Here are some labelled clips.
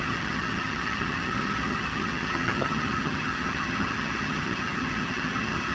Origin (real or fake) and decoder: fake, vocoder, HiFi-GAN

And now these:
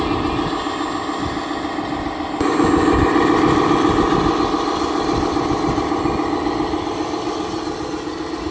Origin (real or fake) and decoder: real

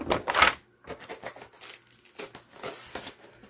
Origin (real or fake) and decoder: real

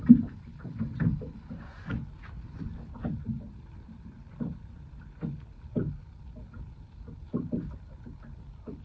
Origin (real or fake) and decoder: real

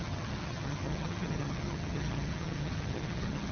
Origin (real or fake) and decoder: fake, vocoder, HiFi-GAN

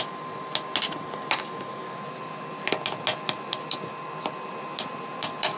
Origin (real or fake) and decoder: real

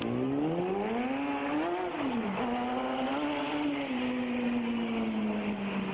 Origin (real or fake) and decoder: real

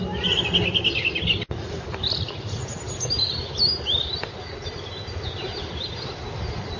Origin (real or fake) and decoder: real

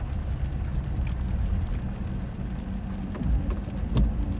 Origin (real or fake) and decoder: real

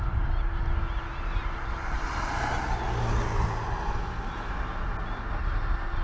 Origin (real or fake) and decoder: real